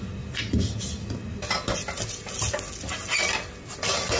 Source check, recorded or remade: recorded